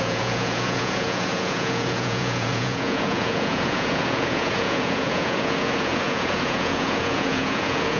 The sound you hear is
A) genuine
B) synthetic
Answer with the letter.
B